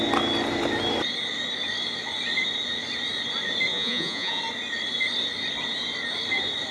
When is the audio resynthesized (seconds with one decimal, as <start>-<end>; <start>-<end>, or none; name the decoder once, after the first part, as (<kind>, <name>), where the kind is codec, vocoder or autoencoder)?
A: 3.7-4.4 (vocoder, Vocos)